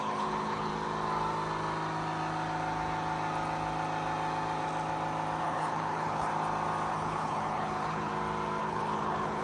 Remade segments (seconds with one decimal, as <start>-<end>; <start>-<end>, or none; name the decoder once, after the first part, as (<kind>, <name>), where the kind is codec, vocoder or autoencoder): 0.0-0.7 (codec, HILCodec); 5.4-6.3; 6.9-8.1; 8.6-9.4